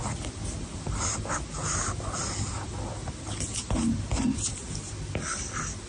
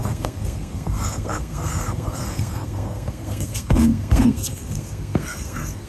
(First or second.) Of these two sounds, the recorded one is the first